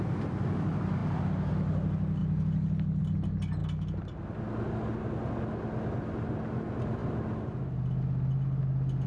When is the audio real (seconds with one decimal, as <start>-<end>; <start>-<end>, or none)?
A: 0.0-9.1